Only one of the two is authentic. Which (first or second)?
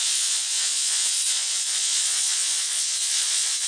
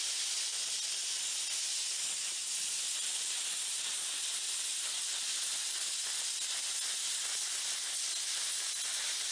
second